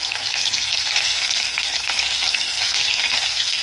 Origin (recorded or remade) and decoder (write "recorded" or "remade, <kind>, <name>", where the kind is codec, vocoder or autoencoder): remade, codec, SNAC